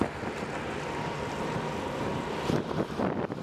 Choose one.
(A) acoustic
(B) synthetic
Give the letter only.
A